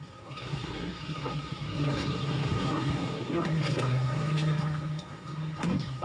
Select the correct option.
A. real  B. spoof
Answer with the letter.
B